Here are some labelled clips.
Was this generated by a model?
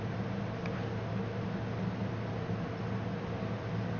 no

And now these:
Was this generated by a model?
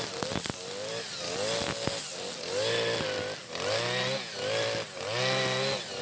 no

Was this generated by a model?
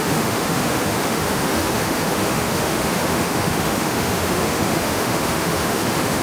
yes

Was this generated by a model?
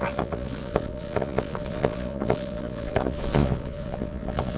yes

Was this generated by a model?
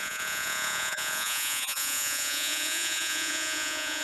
yes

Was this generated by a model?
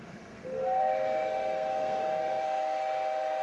yes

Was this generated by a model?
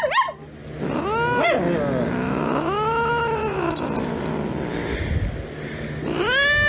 no